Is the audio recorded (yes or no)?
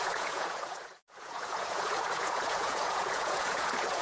no